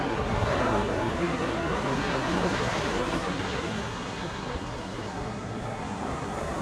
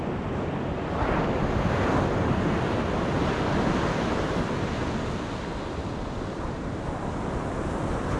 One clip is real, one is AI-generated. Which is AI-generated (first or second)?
first